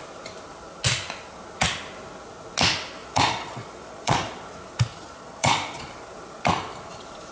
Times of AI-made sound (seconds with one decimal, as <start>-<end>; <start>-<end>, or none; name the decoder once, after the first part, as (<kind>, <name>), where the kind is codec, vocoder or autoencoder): 3.0-4.4 (vocoder, Vocos); 4.9-5.9